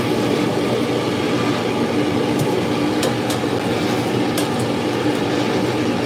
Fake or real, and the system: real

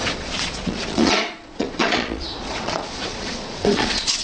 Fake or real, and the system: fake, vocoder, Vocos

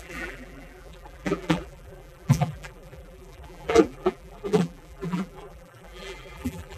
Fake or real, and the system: fake, vocoder, BigVGAN v2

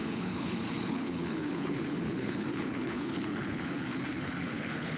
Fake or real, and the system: fake, codec, HILCodec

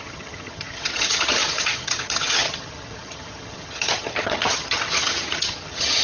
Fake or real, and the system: fake, vocoder, HiFi-GAN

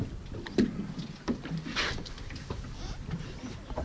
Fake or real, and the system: real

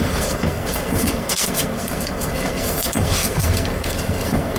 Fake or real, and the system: fake, codec, SNAC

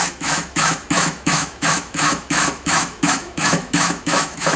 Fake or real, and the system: fake, autoencoder, DAC-VAE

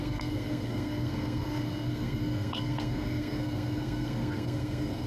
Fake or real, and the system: fake, codec, SNAC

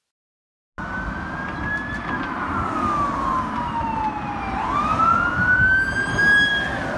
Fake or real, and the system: real